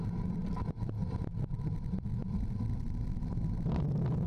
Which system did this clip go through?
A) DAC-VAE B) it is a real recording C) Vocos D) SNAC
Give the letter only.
B